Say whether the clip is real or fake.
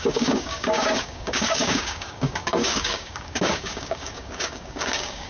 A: fake